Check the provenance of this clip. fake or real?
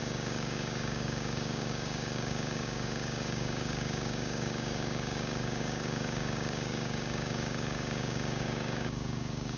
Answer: fake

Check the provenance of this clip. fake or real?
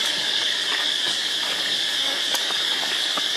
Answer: fake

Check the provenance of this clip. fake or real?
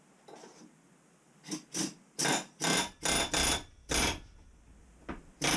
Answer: real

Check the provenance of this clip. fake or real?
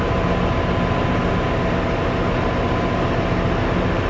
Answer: real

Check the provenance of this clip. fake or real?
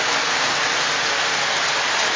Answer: real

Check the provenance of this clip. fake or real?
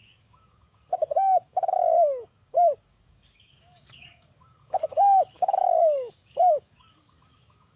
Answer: fake